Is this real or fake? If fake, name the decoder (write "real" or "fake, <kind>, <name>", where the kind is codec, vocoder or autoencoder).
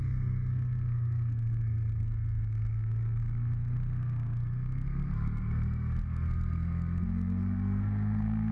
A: fake, codec, SNAC